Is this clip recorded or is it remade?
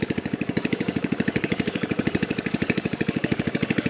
remade